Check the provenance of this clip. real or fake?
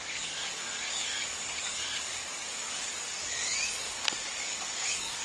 fake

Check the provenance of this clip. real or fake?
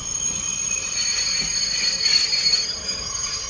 real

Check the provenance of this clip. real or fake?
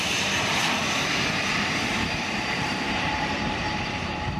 fake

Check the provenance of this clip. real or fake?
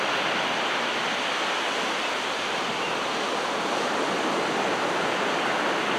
real